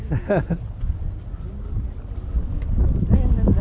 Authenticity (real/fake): real